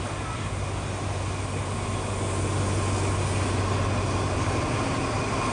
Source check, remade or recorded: recorded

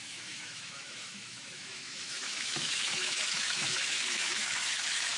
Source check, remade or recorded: remade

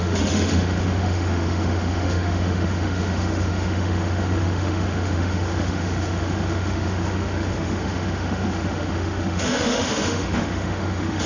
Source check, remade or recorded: remade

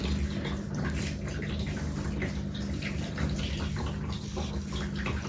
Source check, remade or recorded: recorded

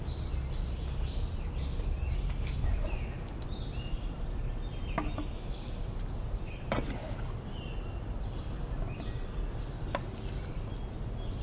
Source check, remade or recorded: recorded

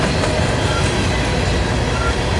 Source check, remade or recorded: recorded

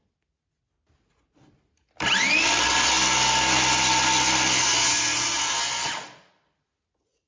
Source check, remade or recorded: recorded